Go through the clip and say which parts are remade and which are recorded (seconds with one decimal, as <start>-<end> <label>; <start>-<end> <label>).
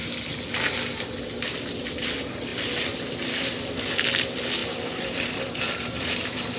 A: 0.0-4.6 recorded; 4.6-5.7 remade; 5.7-6.6 recorded